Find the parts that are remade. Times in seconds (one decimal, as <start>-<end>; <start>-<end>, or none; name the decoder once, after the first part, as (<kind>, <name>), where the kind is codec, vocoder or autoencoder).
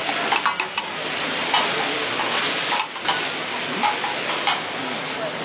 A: none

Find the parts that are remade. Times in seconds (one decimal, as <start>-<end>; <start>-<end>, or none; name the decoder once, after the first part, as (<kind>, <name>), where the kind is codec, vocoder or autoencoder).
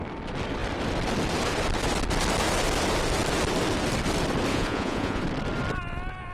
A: 4.5-5.2 (vocoder, Vocos)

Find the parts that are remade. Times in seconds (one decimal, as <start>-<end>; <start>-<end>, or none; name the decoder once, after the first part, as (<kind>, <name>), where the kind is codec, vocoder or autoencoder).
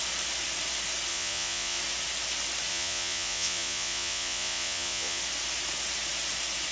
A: 1.1-1.8 (vocoder, Vocos); 2.7-5.2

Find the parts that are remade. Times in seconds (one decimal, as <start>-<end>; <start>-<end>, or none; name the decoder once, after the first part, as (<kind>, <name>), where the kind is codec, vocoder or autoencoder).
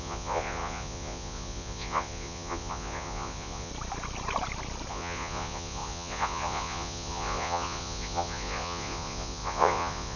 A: 0.0-3.7 (vocoder, Vocos); 4.9-10.2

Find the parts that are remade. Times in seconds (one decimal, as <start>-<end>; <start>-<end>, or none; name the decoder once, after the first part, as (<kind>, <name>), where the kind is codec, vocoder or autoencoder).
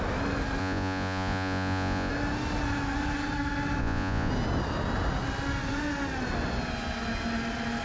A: 0.6-2.1 (vocoder, Vocos); 3.8-4.3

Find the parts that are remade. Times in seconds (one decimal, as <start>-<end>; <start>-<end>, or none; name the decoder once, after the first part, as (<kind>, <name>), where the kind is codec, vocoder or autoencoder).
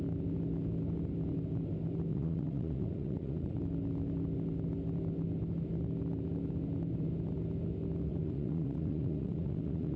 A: 2.1-3.6 (vocoder, Vocos); 8.1-10.0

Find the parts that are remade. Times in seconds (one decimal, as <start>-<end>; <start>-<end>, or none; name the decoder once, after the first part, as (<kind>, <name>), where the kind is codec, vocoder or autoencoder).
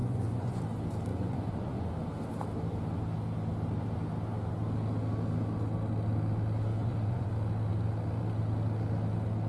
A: 0.0-0.6 (vocoder, Vocos); 1.1-1.9; 6.7-7.3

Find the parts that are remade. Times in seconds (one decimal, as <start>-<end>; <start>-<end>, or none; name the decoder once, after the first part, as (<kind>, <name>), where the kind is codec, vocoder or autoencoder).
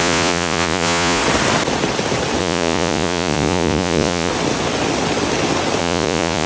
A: 0.0-1.2 (vocoder, Vocos); 2.4-4.3; 5.8-6.5